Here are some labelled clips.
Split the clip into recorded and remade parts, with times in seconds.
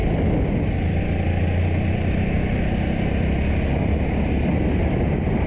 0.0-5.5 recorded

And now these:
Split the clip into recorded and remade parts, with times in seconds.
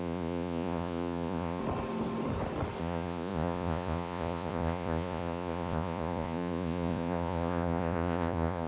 0.0-1.6 remade; 1.6-2.8 recorded; 2.8-8.7 remade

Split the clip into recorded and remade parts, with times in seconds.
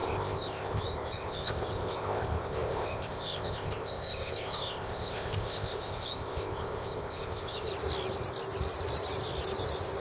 0.0-7.7 remade; 7.7-10.0 recorded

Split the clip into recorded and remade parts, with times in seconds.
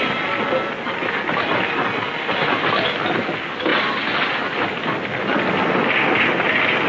0.0-6.9 recorded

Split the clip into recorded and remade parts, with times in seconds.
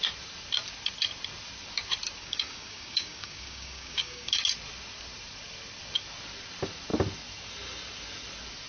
0.0-2.2 recorded; 2.2-4.3 remade; 4.3-8.7 recorded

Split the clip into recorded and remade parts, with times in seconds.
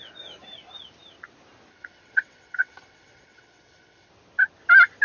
0.0-1.7 recorded; 1.7-4.1 remade; 4.1-5.0 recorded